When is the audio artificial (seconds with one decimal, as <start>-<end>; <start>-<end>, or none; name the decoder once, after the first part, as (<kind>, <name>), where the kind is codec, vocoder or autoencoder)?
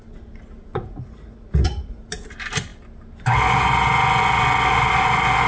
0.7-2.0 (vocoder, Vocos)